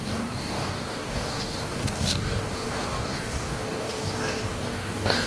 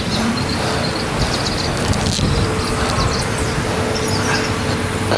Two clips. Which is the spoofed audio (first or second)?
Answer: first